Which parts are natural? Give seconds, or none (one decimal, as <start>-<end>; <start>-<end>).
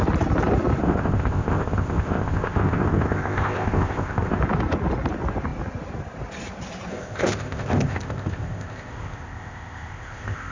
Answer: 0.0-0.8; 4.4-6.9